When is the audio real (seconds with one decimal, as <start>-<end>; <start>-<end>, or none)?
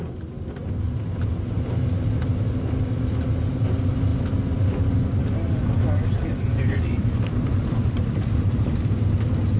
0.0-7.0; 9.0-9.6